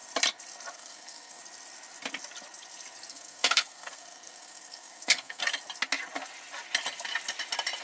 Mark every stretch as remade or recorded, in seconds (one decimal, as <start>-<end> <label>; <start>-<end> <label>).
0.0-0.7 recorded; 0.7-1.4 remade; 1.4-3.1 recorded; 3.1-5.4 remade; 5.4-7.8 recorded